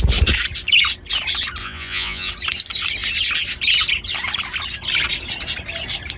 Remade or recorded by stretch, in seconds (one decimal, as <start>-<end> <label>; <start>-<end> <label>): 0.0-1.6 recorded; 1.6-2.3 remade; 2.3-6.2 recorded